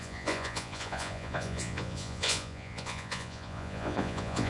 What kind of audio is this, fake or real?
fake